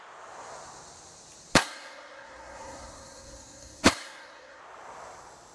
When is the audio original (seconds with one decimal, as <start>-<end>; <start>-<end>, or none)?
0.0-1.6; 4.6-5.5